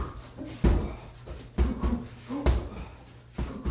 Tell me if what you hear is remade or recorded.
recorded